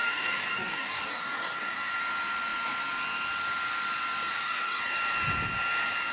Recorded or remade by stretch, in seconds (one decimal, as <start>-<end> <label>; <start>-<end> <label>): 0.0-1.9 remade; 1.9-4.3 recorded; 4.3-4.8 remade; 4.8-6.1 recorded